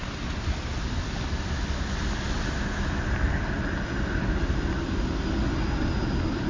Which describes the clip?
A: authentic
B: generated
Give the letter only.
A